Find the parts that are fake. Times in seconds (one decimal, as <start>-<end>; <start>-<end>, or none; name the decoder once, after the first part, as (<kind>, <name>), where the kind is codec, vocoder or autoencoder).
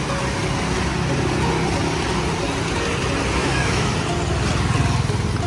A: 3.4-3.9 (autoencoder, DAC-VAE)